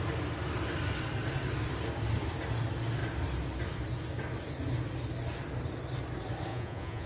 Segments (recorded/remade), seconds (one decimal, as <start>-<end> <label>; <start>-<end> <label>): 0.0-6.5 recorded; 6.5-7.1 remade